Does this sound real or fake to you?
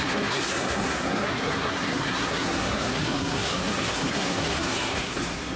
fake